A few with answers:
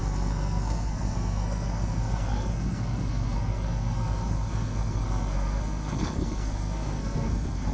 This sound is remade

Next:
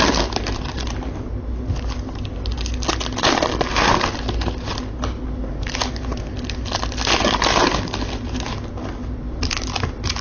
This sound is recorded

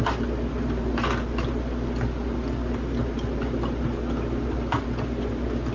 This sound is recorded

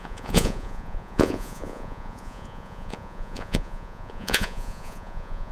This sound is remade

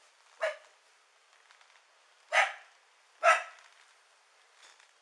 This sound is recorded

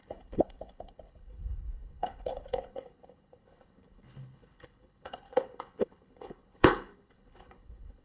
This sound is remade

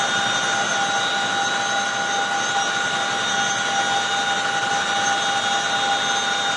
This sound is recorded